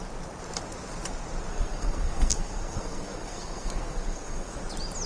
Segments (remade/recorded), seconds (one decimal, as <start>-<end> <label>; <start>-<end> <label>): 0.0-1.5 recorded; 1.5-4.6 remade; 4.6-5.1 recorded